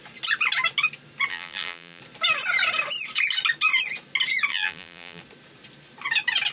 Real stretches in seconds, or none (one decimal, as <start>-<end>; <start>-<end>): 0.0-1.3; 2.0-4.5; 5.2-6.5